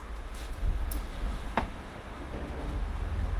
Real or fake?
fake